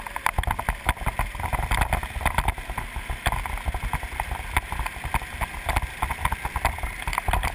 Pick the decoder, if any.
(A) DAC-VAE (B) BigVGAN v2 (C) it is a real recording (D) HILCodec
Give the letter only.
C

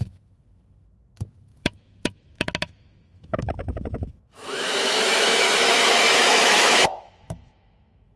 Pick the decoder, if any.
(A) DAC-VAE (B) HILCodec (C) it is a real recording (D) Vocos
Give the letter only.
A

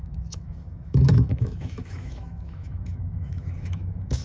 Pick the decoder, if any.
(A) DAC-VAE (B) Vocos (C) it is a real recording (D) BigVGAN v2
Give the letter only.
A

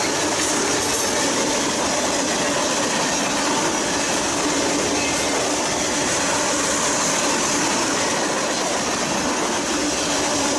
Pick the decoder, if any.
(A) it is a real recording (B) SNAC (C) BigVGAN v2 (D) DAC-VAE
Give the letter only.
A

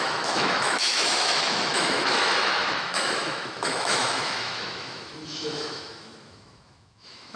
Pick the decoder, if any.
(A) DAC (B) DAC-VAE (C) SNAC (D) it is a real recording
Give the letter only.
B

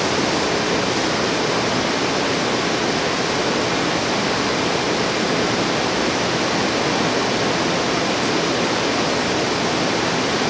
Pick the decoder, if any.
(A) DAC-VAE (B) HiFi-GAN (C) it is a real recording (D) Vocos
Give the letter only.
C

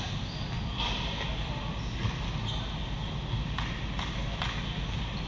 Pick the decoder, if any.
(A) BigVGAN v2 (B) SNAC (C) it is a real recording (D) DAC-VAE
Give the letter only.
C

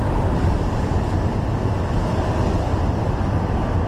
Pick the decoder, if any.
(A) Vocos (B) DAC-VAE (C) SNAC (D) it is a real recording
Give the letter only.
D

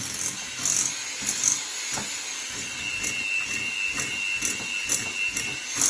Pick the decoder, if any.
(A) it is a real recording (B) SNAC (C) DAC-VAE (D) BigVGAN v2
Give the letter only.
A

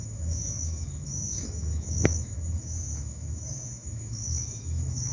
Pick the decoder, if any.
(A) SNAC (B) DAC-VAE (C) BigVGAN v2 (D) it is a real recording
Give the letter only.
B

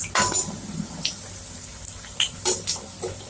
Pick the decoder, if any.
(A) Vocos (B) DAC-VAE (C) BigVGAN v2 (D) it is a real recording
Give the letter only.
D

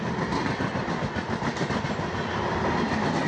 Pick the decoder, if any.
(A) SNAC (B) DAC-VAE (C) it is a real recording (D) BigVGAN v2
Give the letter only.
C